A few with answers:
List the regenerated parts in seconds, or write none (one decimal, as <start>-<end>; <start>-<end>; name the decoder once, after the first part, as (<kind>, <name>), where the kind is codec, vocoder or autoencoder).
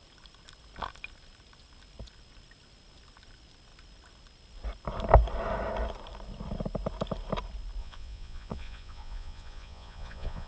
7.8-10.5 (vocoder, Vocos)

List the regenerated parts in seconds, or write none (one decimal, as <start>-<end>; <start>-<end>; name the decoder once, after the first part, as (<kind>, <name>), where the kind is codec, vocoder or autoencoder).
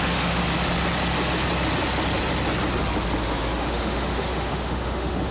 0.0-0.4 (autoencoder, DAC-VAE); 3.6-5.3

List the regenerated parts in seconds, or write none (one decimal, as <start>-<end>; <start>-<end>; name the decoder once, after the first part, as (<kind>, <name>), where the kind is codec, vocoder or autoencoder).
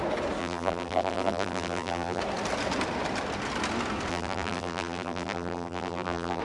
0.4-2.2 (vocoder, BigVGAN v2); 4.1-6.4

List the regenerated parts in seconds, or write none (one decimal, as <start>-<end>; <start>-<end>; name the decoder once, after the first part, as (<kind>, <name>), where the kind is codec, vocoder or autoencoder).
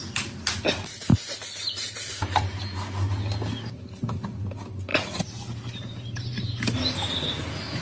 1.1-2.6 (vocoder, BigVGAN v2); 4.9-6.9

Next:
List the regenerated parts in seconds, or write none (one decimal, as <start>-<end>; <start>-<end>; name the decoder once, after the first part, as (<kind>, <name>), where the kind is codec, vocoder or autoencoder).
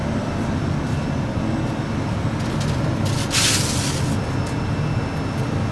none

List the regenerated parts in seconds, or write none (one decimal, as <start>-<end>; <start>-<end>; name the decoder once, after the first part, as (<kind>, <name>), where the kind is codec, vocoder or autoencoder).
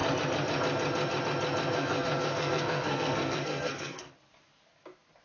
1.7-4.1 (codec, SNAC)